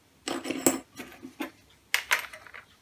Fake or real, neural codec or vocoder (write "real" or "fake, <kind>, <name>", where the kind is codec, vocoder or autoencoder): real